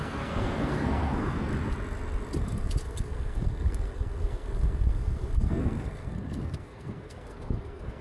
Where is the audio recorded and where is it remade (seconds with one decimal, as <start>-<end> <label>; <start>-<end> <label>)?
0.0-1.5 remade; 1.5-2.4 recorded; 2.4-8.0 remade